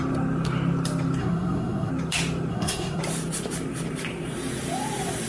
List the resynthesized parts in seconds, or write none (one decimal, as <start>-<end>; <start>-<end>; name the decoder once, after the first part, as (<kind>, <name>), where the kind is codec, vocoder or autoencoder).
1.2-1.9 (codec, SNAC); 2.5-3.0